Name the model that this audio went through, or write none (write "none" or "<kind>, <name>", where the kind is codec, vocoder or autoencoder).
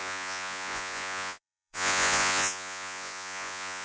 vocoder, Vocos